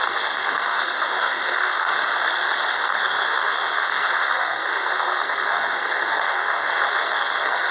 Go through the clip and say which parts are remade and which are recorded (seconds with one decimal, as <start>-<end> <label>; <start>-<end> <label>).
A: 0.0-2.0 remade; 2.0-2.7 recorded; 2.7-7.7 remade